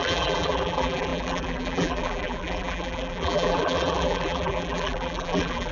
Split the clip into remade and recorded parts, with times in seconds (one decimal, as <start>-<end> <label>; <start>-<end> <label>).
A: 0.0-5.7 remade